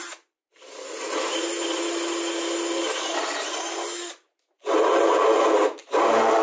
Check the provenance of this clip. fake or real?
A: real